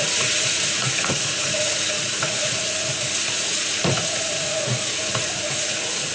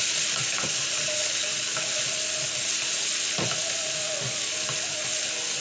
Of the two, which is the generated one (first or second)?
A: first